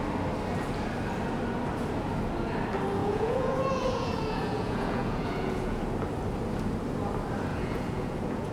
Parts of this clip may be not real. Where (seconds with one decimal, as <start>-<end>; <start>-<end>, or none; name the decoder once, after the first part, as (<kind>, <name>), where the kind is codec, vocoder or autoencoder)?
3.0-5.8 (vocoder, Vocos); 7.5-8.5